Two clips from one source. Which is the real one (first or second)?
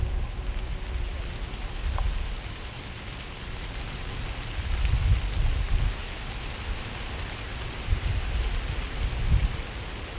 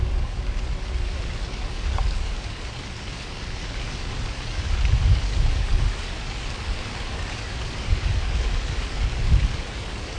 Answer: first